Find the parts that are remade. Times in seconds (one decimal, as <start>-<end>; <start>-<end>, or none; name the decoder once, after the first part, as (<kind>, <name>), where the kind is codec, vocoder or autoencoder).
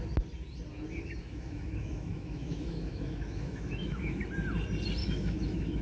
1.2-4.2 (autoencoder, DAC-VAE); 5.0-5.8